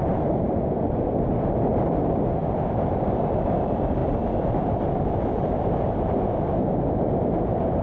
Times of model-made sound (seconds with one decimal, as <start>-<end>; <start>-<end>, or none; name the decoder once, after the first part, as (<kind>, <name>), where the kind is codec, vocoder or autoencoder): none